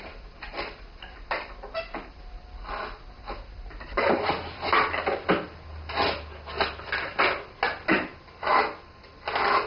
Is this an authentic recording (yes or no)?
yes